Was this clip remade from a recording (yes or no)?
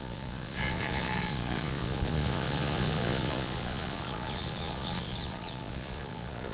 yes